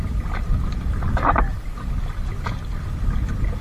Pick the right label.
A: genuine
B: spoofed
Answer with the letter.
A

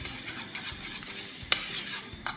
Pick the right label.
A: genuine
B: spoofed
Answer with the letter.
A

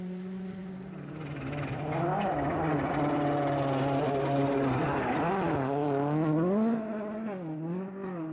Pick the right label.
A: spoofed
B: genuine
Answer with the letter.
B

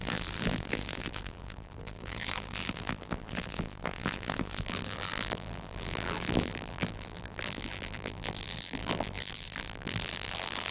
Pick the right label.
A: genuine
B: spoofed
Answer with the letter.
B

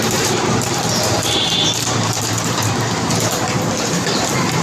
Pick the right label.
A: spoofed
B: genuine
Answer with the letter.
A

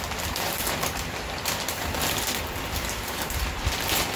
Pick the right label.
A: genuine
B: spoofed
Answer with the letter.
B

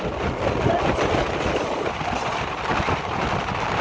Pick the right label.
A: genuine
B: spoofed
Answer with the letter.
A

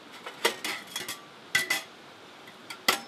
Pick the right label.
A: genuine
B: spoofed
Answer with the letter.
A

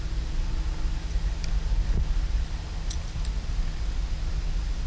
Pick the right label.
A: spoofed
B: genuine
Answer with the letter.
B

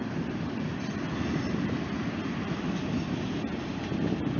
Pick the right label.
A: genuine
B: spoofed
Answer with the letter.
B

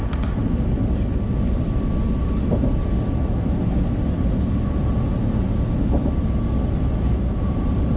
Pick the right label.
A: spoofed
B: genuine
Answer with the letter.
B